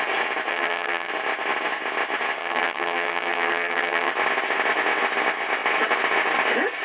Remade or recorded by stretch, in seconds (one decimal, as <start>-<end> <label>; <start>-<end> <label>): 0.0-0.5 recorded; 0.5-1.1 remade; 1.1-2.4 recorded; 2.4-4.1 remade; 4.1-6.8 recorded